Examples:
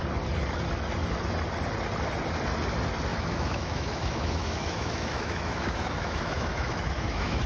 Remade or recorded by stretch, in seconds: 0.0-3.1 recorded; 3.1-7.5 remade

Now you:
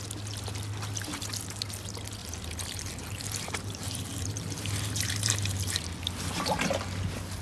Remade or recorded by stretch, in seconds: 0.0-2.2 recorded; 2.2-5.8 remade; 5.8-7.4 recorded

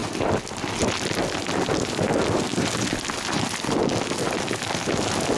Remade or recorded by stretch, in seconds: 0.0-5.4 recorded

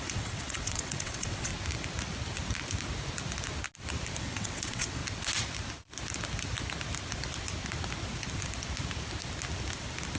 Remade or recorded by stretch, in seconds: 0.0-1.5 remade; 1.5-4.2 recorded; 4.2-5.0 remade; 5.0-10.2 recorded

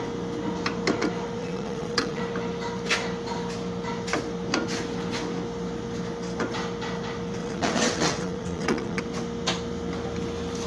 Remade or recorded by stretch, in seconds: 0.0-1.4 recorded; 1.4-2.2 remade; 2.2-7.4 recorded; 7.4-9.0 remade; 9.0-10.7 recorded

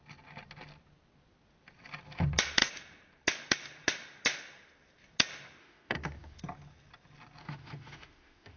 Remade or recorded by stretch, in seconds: 0.0-5.6 recorded; 5.6-6.4 remade; 6.4-7.4 recorded; 7.4-8.6 remade

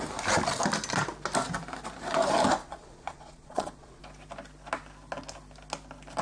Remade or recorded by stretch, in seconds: 0.0-2.6 recorded; 2.6-4.0 remade; 4.0-6.2 recorded

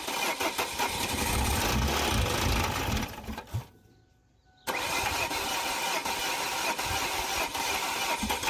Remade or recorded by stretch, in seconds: 0.0-8.5 recorded